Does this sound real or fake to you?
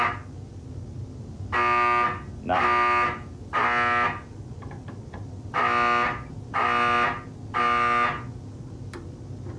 real